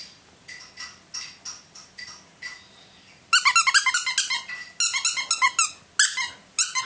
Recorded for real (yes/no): yes